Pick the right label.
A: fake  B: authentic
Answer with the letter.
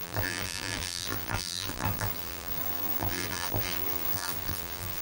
A